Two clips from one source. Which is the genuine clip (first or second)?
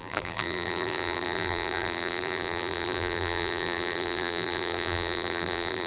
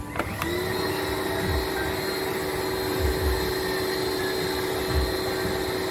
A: second